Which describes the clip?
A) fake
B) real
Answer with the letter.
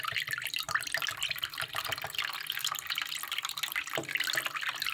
B